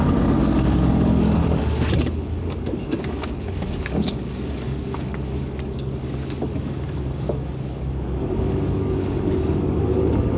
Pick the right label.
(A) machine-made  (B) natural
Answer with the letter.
A